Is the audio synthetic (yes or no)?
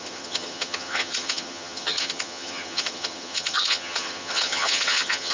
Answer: yes